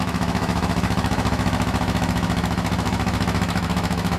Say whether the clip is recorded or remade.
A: remade